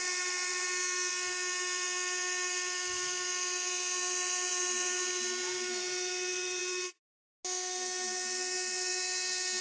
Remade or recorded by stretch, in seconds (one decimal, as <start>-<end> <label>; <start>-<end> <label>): 0.0-9.6 recorded